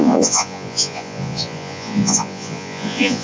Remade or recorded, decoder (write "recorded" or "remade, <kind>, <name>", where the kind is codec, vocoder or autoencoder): remade, vocoder, Vocos